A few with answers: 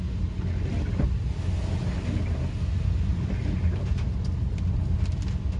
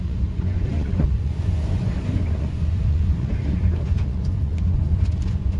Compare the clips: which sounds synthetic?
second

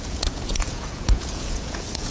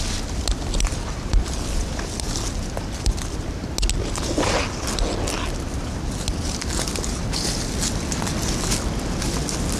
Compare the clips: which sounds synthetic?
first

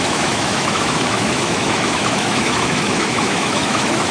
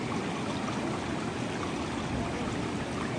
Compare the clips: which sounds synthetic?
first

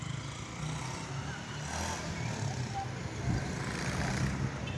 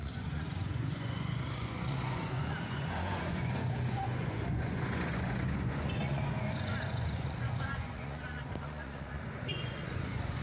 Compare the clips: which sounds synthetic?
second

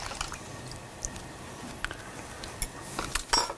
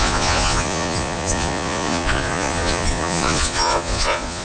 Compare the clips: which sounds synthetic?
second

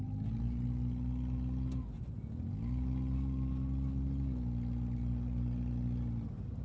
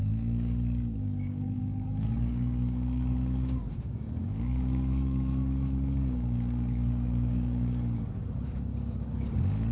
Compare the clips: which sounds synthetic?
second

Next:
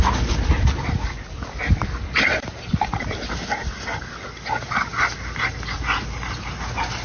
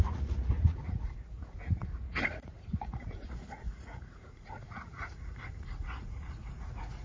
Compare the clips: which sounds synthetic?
second